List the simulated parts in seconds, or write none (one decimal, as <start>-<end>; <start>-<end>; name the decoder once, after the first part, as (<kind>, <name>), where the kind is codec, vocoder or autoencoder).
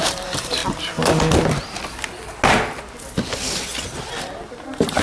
0.0-0.6 (vocoder, BigVGAN v2); 3.0-3.7; 4.4-5.0